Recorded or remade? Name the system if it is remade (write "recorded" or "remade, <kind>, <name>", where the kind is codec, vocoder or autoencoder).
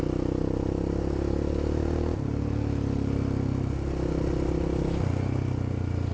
recorded